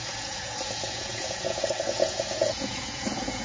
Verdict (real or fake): fake